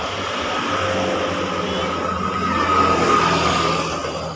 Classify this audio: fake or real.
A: real